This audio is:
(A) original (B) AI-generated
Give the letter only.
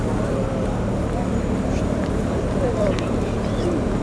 A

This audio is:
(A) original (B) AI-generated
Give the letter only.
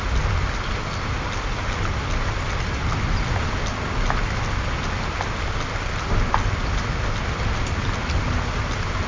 A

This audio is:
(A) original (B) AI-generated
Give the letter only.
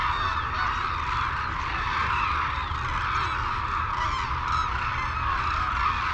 A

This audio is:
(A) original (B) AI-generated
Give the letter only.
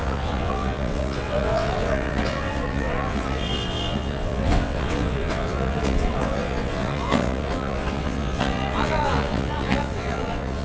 B